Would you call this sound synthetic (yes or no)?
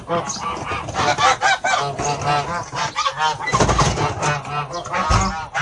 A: no